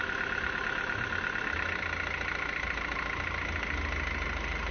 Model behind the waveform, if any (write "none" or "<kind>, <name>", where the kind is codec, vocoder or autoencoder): none